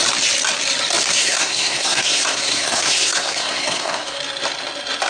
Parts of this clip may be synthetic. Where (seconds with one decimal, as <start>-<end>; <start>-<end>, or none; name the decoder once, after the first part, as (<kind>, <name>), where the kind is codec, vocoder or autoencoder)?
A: 1.1-4.2 (codec, SNAC)